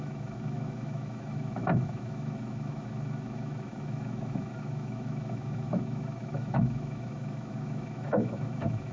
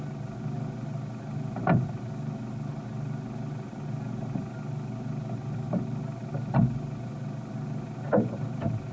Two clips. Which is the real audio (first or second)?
second